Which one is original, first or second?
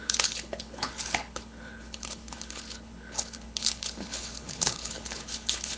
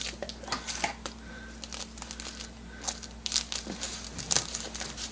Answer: second